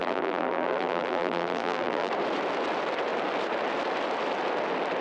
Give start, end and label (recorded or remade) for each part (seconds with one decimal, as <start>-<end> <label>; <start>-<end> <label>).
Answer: 0.0-2.1 remade; 2.1-5.0 recorded